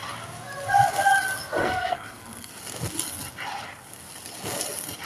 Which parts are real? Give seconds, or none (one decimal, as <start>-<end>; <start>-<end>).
0.0-1.6; 2.5-5.1